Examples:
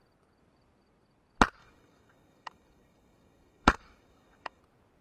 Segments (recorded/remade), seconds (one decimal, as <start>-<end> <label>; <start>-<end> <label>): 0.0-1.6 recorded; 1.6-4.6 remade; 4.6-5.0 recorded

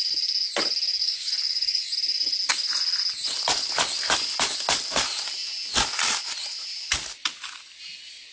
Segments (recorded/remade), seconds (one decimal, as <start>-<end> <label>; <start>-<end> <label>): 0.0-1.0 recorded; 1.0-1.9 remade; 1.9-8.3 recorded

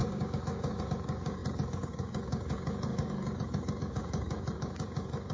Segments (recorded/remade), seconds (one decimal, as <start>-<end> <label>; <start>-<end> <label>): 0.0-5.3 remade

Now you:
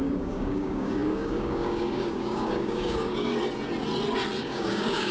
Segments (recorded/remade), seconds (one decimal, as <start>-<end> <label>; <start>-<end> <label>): 0.0-3.3 remade; 3.3-4.4 recorded; 4.4-5.1 remade

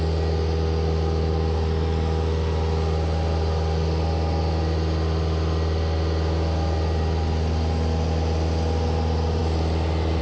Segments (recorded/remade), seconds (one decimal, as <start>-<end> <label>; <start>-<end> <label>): 0.0-10.2 recorded